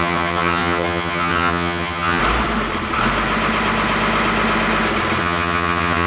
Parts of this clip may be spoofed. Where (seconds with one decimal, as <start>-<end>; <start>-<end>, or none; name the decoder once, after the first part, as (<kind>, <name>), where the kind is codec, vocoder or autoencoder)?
0.0-2.2 (vocoder, HiFi-GAN); 5.2-6.1